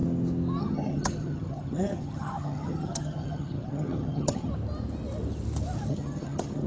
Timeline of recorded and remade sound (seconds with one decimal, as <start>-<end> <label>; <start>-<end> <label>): 0.0-0.6 recorded; 0.6-4.5 remade; 4.5-5.9 recorded; 5.9-6.7 remade